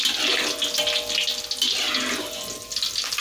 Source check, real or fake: real